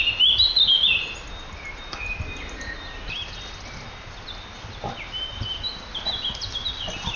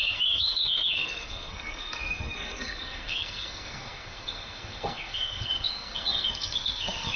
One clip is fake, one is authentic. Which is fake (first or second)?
second